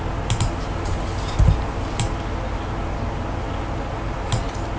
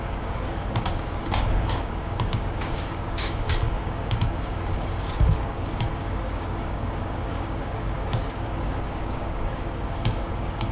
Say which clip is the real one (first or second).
first